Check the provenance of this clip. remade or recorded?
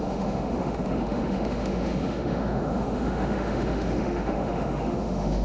remade